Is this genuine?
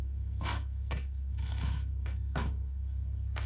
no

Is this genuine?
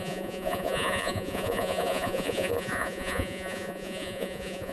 no